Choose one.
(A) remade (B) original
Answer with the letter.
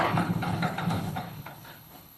A